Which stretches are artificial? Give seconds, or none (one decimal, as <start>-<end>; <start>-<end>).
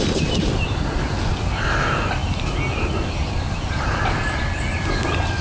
none